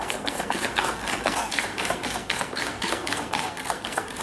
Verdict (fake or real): fake